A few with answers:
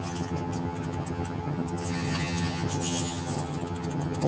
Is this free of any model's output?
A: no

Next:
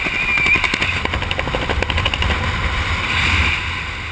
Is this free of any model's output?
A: yes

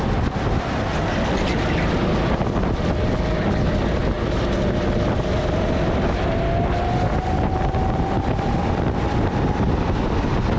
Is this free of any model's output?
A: yes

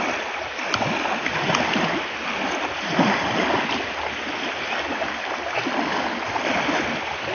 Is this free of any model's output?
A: yes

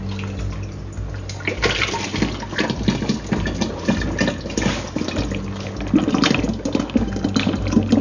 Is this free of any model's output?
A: yes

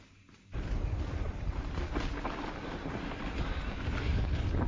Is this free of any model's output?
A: yes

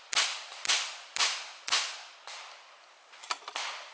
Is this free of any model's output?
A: yes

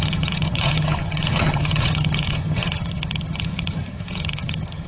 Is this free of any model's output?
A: no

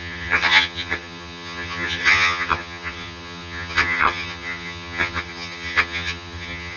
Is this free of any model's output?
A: no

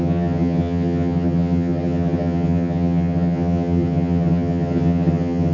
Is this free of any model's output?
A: no